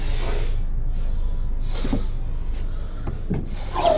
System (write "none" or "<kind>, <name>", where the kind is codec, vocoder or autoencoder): none